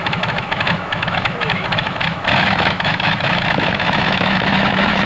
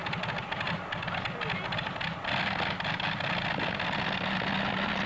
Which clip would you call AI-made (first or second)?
first